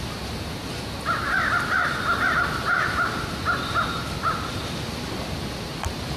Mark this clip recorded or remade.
recorded